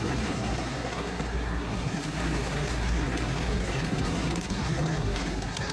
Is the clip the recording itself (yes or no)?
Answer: no